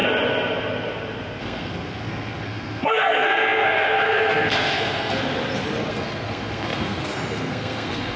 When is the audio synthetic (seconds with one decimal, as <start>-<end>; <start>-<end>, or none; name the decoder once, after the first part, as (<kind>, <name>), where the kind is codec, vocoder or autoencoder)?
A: 1.4-5.2 (codec, SNAC); 5.9-8.2